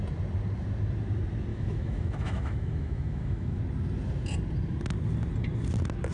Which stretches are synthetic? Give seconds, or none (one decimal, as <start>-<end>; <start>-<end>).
1.5-3.6